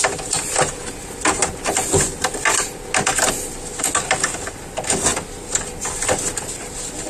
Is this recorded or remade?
recorded